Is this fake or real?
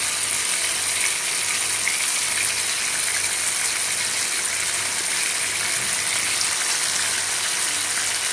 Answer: real